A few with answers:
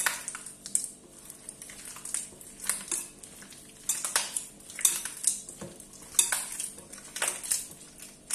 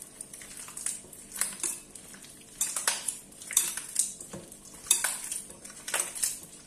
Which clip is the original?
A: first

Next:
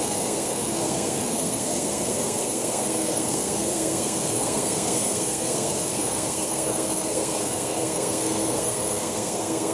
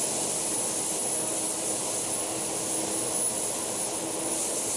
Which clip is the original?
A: second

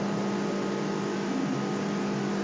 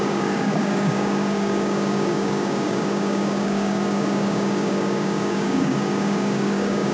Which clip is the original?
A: first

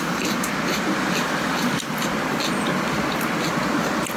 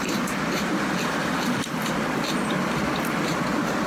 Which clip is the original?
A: first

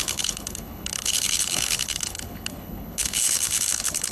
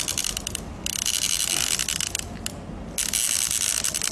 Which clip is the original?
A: second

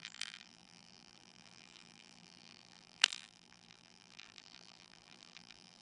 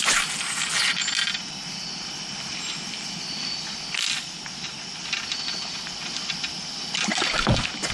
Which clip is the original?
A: second